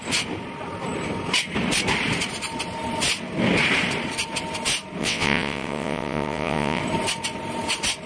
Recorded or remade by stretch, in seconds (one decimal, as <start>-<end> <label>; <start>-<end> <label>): 0.0-5.0 recorded; 5.0-6.8 remade; 6.8-8.1 recorded